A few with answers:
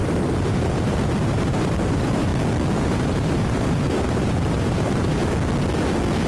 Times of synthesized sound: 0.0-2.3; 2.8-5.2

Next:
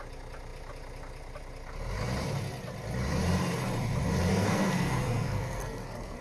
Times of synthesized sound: 4.3-6.2

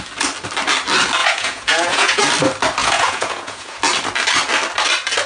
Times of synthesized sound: 1.2-2.2; 2.8-3.8

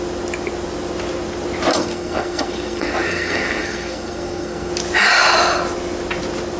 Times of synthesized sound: 1.7-4.7

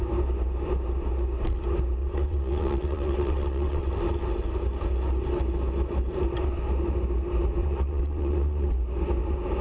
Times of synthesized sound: 2.0-3.9; 7.6-8.7